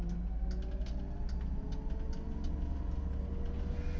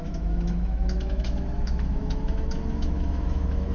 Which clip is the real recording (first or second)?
first